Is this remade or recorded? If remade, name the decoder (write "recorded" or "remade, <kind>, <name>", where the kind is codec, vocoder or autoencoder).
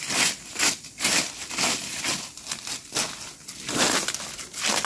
recorded